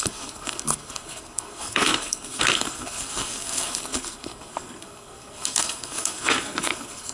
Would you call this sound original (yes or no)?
no